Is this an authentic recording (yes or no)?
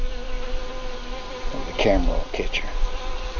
yes